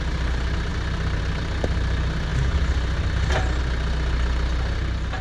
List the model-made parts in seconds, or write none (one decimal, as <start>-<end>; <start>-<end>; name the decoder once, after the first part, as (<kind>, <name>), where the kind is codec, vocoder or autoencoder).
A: none